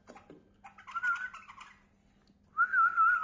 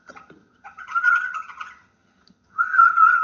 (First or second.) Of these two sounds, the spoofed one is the second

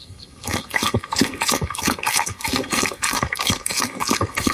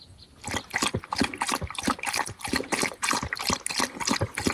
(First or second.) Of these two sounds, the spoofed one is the first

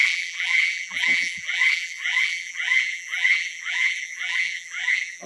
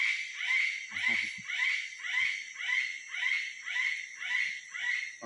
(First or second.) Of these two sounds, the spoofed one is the first